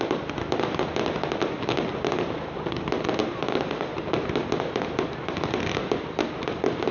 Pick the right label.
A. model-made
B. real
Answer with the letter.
B